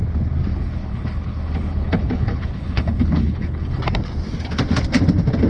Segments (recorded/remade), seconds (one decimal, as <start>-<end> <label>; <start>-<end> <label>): 0.0-0.5 recorded; 0.5-3.8 remade; 3.8-5.5 recorded